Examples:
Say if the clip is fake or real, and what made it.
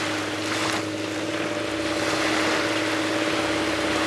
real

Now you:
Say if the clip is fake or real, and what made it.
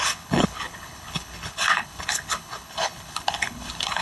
fake, codec, HILCodec